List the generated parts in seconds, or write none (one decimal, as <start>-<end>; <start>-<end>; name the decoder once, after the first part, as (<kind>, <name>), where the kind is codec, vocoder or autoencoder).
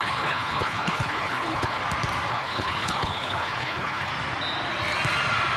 0.0-1.8 (codec, HILCodec); 2.3-4.1